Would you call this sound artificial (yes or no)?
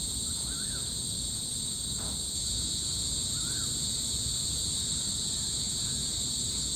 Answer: yes